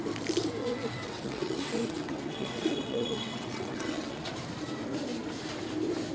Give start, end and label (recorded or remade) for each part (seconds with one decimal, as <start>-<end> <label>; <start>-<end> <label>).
0.0-0.6 recorded; 0.6-4.3 remade; 4.3-6.1 recorded